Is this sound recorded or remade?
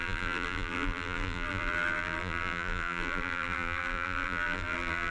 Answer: remade